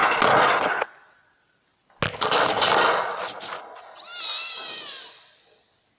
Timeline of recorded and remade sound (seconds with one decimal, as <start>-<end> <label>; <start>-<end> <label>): 0.0-6.0 recorded

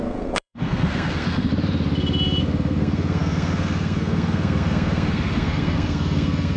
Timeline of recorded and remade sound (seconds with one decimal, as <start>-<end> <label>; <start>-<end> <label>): 0.0-1.5 remade; 1.5-2.4 recorded; 2.4-6.6 remade